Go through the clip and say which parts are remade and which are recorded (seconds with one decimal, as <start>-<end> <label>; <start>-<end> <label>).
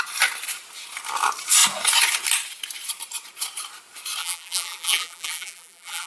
0.0-4.2 recorded; 4.2-6.1 remade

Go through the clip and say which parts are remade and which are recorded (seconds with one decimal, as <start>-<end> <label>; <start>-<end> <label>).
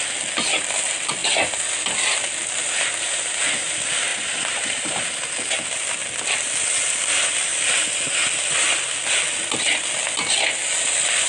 0.0-4.1 recorded; 4.1-5.1 remade; 5.1-11.3 recorded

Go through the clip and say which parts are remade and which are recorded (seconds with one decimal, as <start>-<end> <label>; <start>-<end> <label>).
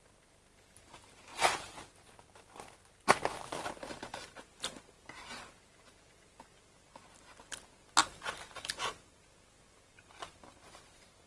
0.0-1.3 recorded; 1.3-1.8 remade; 1.8-4.1 recorded; 4.1-4.7 remade; 4.7-11.3 recorded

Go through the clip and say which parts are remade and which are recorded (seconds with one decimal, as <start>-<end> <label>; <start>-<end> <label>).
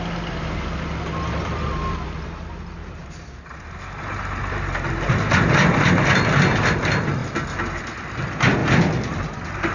0.0-2.8 recorded; 2.8-5.9 remade; 5.9-8.6 recorded; 8.6-9.7 remade